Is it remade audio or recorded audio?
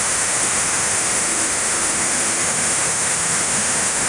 remade